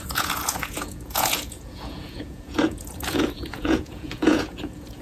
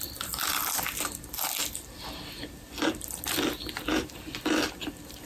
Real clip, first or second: second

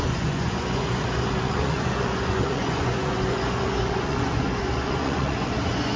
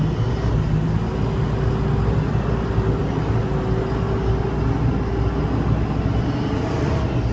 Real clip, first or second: second